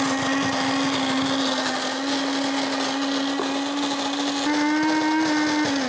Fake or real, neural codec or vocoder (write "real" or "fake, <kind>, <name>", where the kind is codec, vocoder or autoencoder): real